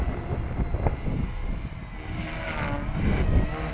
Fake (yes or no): no